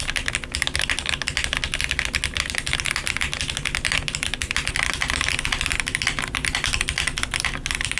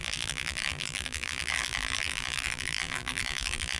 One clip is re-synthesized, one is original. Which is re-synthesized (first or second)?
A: second